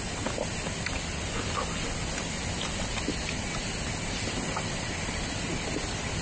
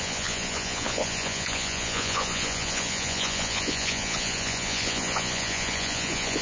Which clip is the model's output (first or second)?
second